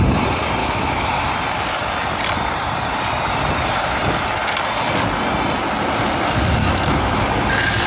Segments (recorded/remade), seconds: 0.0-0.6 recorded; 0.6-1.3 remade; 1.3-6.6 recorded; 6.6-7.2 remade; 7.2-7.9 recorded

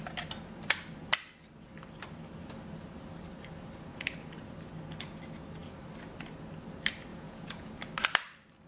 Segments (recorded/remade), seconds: 0.0-7.1 recorded; 7.1-7.7 remade; 7.7-8.7 recorded